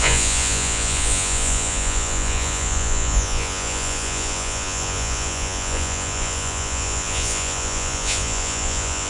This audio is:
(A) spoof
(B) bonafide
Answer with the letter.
A